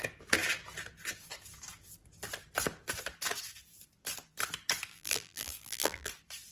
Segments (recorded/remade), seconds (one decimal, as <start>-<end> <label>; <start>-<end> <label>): 0.0-4.9 recorded; 4.9-6.1 remade; 6.1-6.5 recorded